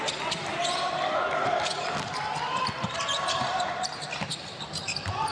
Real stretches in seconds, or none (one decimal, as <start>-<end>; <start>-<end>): none